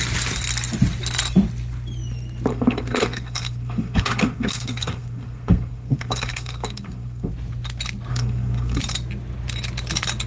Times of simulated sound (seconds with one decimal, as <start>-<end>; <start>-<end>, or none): 2.5-7.3; 8.1-8.8